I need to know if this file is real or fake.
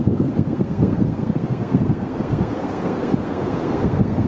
fake